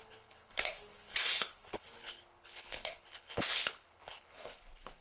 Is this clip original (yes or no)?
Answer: no